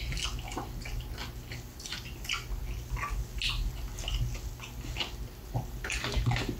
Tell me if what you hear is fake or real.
real